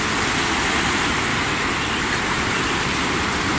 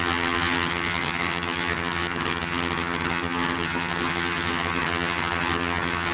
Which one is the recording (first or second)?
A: first